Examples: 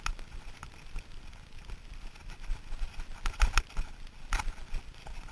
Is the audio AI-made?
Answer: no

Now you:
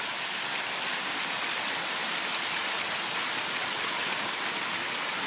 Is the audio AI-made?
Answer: no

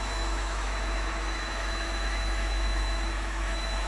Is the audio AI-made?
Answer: yes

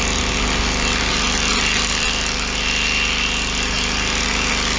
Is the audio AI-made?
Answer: no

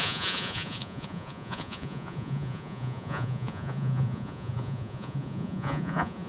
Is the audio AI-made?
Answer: yes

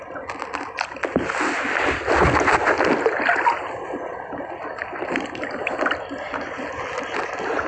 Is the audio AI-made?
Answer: no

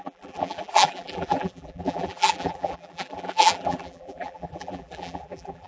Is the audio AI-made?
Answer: yes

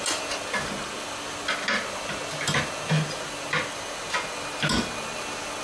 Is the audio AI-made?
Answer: no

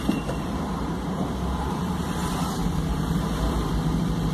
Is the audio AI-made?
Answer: yes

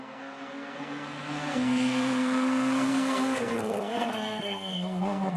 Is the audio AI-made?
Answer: yes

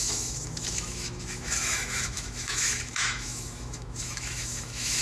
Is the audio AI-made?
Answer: yes